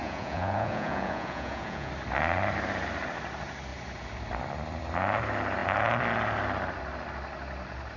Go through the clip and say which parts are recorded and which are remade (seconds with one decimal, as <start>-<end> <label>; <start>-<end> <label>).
0.0-1.9 remade; 1.9-8.0 recorded